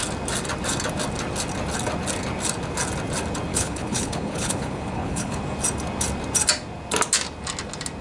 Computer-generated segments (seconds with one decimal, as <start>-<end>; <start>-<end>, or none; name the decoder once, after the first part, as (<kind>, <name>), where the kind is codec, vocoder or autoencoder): 3.5-5.4 (codec, HILCodec)